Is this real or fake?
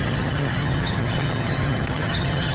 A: fake